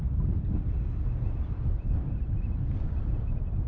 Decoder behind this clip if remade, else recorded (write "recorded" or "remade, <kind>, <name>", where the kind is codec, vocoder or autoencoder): recorded